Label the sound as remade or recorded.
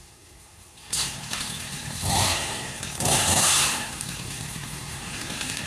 remade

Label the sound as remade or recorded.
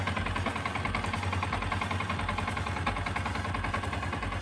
recorded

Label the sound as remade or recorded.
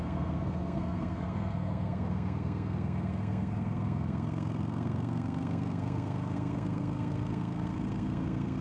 remade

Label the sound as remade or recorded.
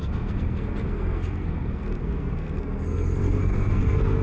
remade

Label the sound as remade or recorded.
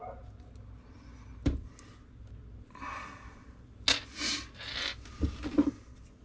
recorded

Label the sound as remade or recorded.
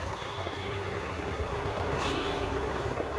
remade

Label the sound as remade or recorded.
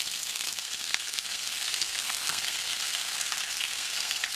remade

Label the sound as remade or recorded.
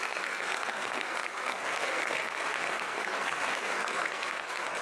remade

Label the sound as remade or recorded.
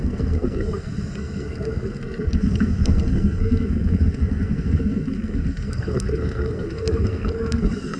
remade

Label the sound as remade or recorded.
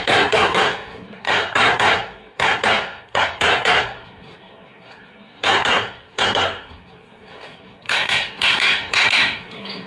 remade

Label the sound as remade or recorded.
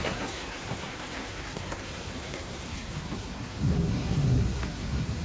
remade